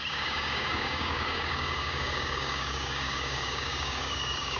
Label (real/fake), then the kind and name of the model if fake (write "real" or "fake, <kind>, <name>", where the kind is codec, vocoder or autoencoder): fake, codec, DAC